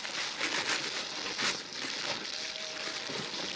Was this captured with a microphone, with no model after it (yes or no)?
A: yes